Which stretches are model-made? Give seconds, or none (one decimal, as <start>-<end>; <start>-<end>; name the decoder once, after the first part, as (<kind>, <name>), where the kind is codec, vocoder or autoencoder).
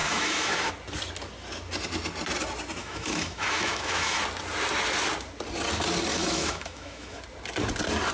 0.0-0.7 (autoencoder, DAC-VAE); 2.8-4.2; 6.1-7.2